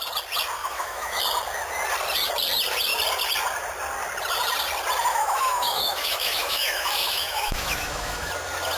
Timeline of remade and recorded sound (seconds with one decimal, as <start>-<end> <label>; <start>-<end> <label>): 0.0-0.6 recorded; 0.6-1.2 remade; 1.2-5.1 recorded; 5.1-8.3 remade; 8.3-8.8 recorded